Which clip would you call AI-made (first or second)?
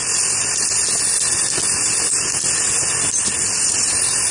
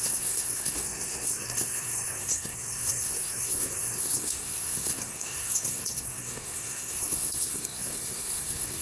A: second